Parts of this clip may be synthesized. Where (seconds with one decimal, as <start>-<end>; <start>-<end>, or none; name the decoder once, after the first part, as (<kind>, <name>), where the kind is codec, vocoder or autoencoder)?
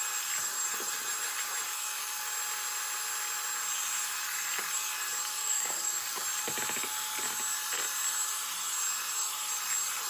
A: 1.7-2.2 (codec, DAC); 5.4-6.2